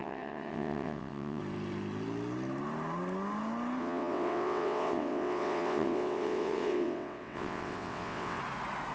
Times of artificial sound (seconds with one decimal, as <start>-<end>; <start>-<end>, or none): 0.0-1.4; 3.8-8.4